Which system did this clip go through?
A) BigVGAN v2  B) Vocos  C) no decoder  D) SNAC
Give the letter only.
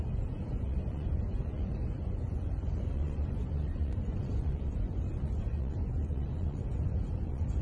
B